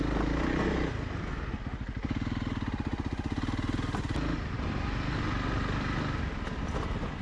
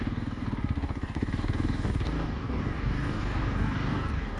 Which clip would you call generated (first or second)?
second